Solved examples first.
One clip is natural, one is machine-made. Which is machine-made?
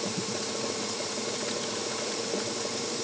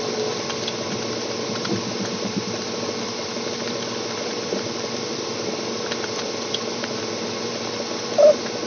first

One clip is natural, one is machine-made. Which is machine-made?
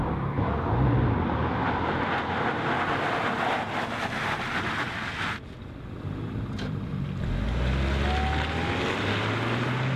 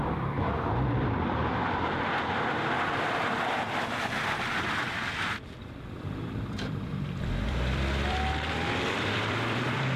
second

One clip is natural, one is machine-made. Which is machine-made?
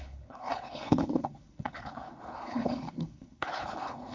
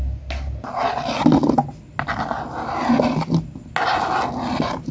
first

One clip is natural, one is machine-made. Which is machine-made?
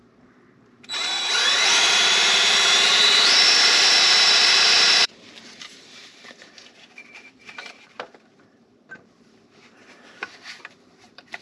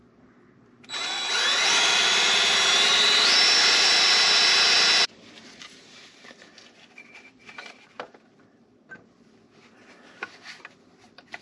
first